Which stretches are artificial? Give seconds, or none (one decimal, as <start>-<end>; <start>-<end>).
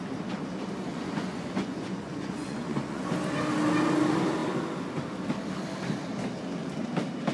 0.9-3.1